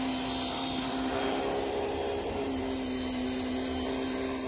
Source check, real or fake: real